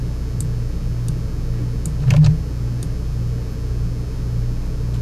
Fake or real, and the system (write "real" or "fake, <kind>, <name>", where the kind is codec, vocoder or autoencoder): real